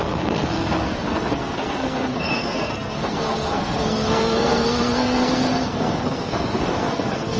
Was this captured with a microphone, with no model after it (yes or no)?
no